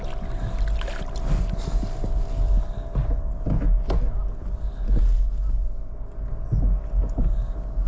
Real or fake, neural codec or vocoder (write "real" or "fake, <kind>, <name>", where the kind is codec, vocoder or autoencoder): real